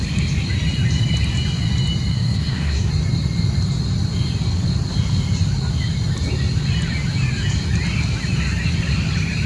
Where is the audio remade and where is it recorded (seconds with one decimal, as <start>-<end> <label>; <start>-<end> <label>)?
0.0-2.1 recorded; 2.1-2.9 remade; 2.9-9.5 recorded